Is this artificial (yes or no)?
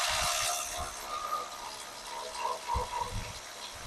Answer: no